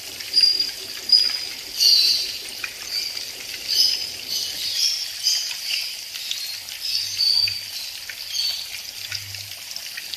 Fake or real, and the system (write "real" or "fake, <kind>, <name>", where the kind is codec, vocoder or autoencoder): real